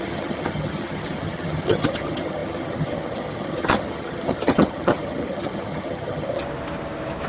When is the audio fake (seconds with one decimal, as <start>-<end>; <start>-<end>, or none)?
0.0-6.4